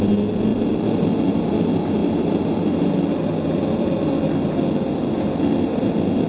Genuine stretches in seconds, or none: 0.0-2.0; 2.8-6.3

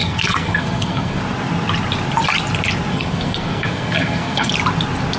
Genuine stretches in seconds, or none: 1.2-2.9; 4.5-5.2

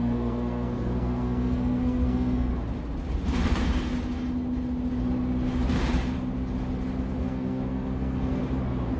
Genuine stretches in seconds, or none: 2.5-7.2; 8.4-9.0

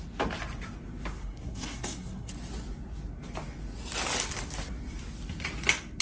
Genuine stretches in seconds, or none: 0.0-1.2; 2.3-6.0

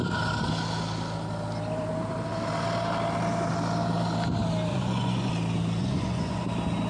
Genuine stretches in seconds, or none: 0.0-4.7; 5.3-5.8; 6.4-6.9